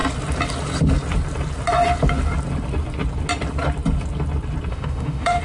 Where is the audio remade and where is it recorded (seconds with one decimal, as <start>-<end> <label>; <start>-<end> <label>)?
0.0-4.7 recorded; 4.7-5.4 remade

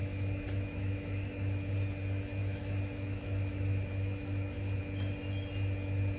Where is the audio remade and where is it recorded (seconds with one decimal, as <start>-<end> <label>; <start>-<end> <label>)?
0.0-1.7 remade; 1.7-2.4 recorded; 2.4-4.8 remade; 4.8-6.2 recorded